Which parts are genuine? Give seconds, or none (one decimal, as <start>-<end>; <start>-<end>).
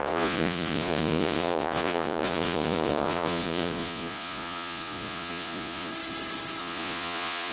5.9-6.6